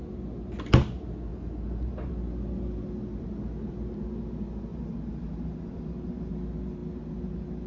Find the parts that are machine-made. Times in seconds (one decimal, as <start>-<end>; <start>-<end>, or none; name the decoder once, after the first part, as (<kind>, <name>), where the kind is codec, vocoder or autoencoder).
1.3-2.1 (vocoder, BigVGAN v2); 4.7-6.3